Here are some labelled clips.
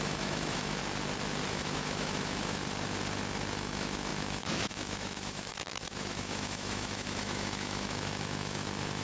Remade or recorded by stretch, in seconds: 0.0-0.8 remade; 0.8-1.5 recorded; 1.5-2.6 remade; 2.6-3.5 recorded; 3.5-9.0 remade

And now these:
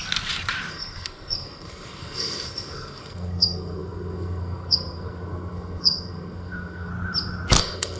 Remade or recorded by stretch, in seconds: 0.0-0.7 recorded; 0.7-6.9 remade; 6.9-7.6 recorded; 7.6-8.0 remade

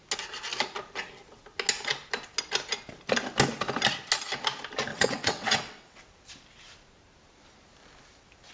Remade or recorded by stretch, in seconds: 0.0-4.9 recorded; 4.9-6.0 remade; 6.0-8.5 recorded

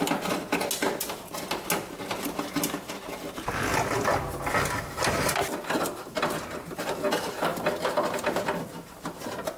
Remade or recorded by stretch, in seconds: 0.0-9.6 recorded

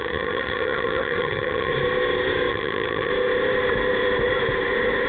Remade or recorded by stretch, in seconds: 0.0-1.7 remade; 1.7-2.5 recorded; 2.5-3.1 remade; 3.1-5.1 recorded